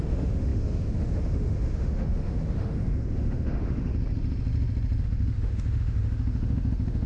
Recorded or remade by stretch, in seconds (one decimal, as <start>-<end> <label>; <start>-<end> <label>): 0.0-3.9 remade; 3.9-5.0 recorded; 5.0-7.1 remade